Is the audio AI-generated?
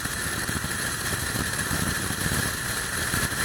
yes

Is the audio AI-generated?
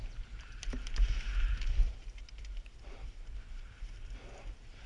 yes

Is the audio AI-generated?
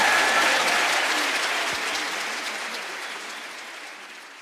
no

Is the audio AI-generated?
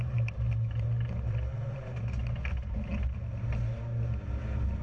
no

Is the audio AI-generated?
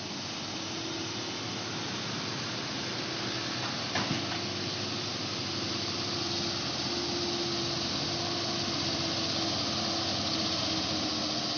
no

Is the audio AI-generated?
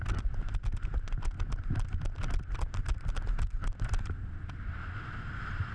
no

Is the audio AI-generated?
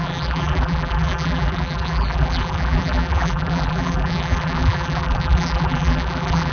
yes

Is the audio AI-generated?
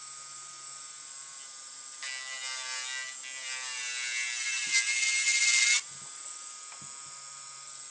no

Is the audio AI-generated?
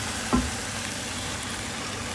yes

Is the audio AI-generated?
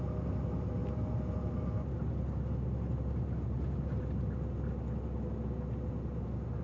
no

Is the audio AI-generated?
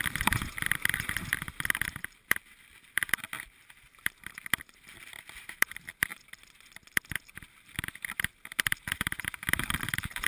yes